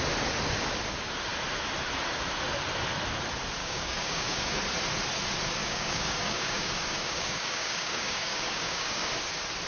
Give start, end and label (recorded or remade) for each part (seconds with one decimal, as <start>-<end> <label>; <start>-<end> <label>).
0.0-3.6 recorded; 3.6-4.6 remade; 4.6-5.6 recorded; 5.6-9.1 remade; 9.1-9.7 recorded